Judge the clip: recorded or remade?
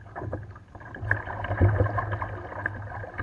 recorded